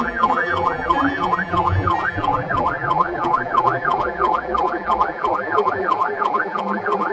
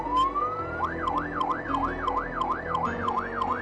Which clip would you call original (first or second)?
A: second